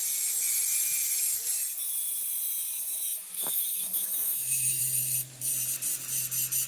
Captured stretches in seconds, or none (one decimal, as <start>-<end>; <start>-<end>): 0.0-3.1; 4.8-6.7